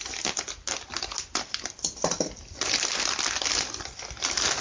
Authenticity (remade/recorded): recorded